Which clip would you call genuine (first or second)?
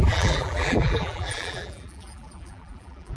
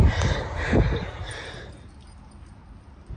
second